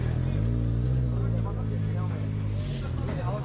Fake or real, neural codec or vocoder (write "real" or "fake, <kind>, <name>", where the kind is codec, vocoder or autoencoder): real